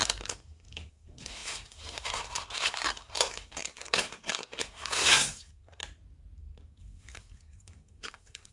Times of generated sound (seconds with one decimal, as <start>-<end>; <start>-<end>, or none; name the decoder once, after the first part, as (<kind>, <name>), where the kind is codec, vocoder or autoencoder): 0.0-5.8 (codec, SNAC); 6.4-8.5